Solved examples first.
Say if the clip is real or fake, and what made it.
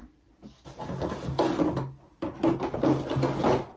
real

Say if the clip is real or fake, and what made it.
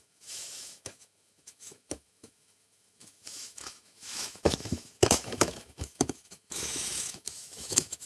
fake, autoencoder, DAC-VAE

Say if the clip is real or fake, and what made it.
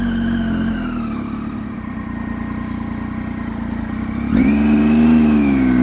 real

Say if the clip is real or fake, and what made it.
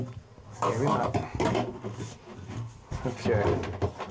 real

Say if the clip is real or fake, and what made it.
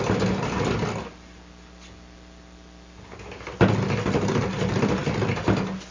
real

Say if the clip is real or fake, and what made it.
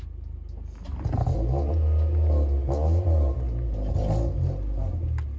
real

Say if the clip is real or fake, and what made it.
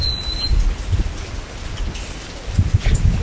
real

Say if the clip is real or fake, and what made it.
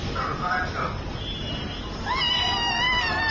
real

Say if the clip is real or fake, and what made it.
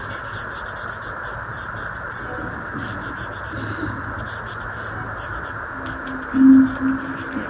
real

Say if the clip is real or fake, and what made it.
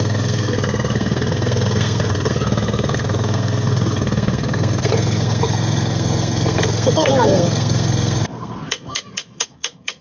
fake, codec, SNAC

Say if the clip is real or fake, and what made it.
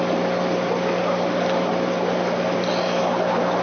real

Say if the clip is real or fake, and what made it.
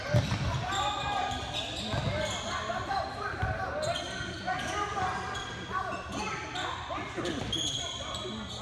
real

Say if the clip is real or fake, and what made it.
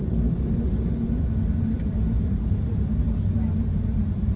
fake, vocoder, BigVGAN v2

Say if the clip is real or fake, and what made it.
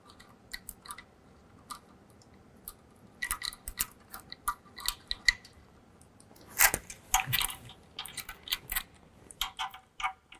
real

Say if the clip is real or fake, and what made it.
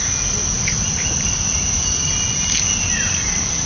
real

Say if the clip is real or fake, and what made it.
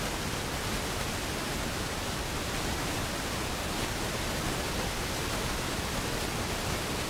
real